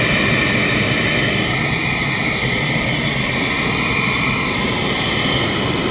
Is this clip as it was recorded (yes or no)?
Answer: yes